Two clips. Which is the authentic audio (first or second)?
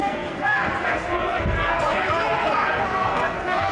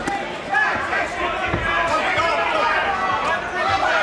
second